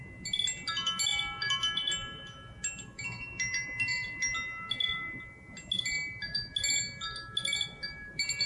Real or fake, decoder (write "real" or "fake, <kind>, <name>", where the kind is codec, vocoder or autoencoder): real